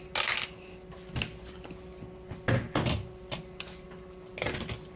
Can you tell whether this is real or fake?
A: real